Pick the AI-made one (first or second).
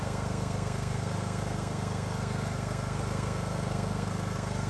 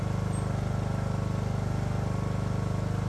first